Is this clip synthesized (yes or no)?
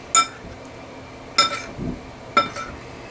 no